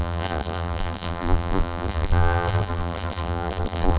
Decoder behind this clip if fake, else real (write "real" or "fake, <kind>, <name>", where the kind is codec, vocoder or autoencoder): fake, vocoder, BigVGAN v2